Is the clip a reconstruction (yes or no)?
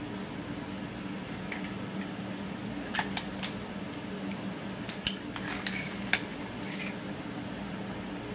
no